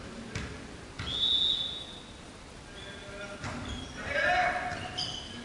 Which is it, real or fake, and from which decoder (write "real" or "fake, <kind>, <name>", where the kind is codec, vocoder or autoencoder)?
real